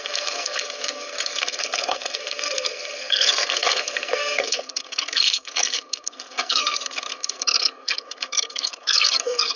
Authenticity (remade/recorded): remade